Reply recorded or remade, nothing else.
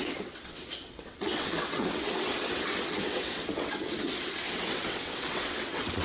remade